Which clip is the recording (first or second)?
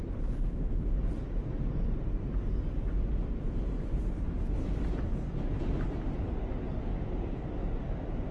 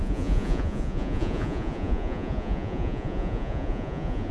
first